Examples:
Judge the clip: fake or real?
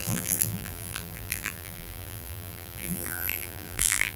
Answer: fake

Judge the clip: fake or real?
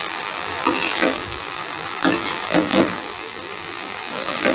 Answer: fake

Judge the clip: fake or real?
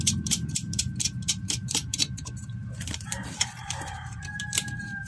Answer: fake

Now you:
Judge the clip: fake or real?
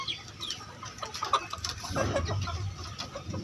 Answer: real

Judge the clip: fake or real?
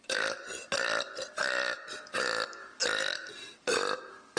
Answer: fake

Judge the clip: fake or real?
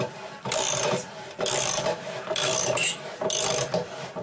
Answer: fake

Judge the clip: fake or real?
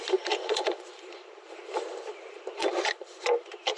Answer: fake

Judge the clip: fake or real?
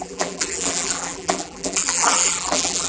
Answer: fake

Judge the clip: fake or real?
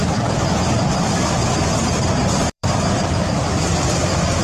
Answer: fake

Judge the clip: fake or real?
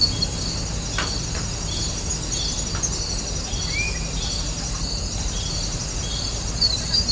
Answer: real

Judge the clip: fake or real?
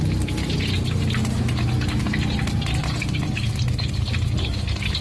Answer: real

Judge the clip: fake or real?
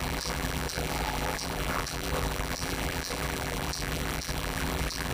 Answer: fake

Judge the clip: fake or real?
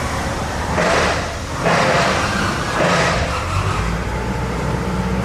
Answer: fake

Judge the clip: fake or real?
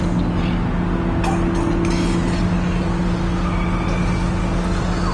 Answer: real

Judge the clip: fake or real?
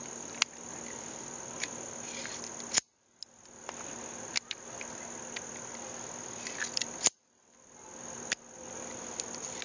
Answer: real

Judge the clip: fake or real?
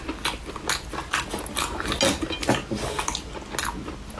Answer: real